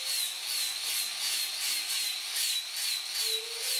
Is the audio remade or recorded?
recorded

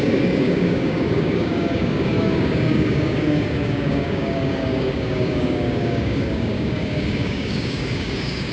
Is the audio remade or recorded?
remade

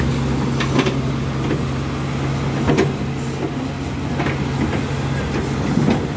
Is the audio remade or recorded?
recorded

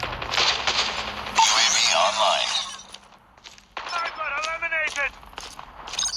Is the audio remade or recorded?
recorded